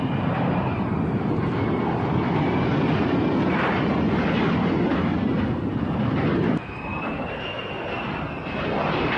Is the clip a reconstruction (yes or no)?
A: no